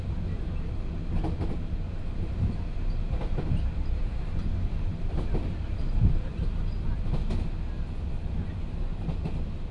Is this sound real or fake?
real